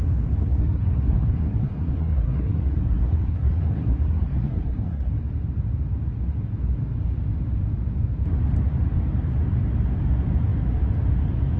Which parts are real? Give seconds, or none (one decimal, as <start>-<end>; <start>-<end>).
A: 0.0-0.4; 5.1-11.6